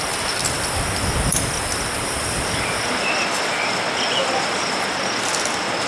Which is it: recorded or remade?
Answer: remade